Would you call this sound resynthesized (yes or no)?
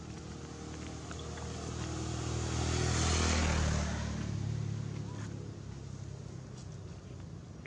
no